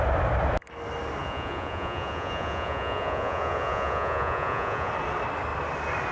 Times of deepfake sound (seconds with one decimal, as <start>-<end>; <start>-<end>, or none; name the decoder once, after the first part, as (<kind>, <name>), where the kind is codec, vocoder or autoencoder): 1.2-4.9 (vocoder, Vocos)